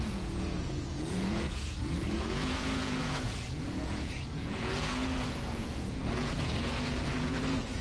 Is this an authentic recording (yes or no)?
no